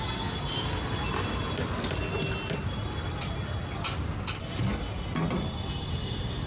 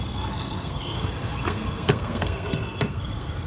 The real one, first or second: first